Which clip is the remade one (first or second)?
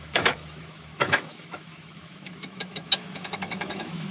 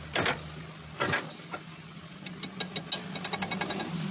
first